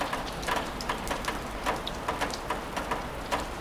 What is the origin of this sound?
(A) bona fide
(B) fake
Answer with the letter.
A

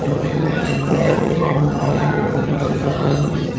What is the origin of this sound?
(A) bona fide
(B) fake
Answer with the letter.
B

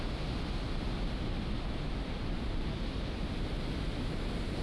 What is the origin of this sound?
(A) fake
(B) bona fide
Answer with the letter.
B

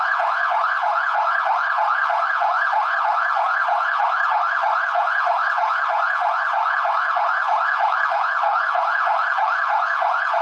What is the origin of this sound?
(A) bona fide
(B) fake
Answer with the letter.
B